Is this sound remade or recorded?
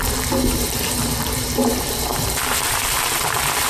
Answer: remade